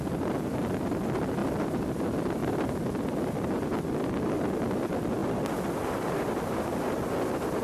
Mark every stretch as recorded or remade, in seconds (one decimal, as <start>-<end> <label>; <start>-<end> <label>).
0.0-1.4 recorded; 1.4-2.0 remade; 2.0-2.4 recorded; 2.4-4.1 remade; 4.1-5.2 recorded; 5.2-6.4 remade; 6.4-7.6 recorded